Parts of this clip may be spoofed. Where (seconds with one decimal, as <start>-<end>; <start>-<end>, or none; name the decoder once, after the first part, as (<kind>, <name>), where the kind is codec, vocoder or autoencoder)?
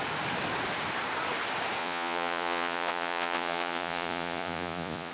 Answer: 1.8-5.1 (vocoder, Vocos)